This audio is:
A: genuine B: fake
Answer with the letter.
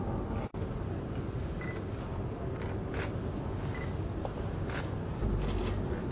A